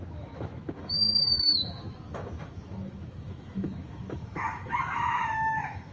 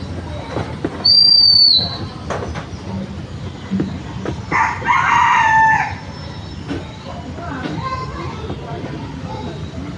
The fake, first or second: first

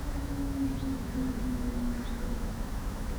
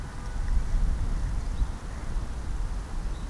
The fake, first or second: first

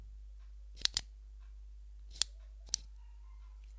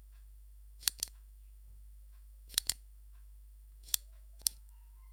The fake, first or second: second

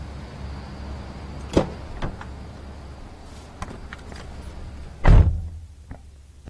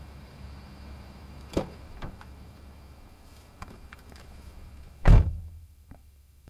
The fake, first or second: second